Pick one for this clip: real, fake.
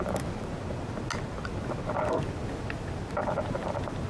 real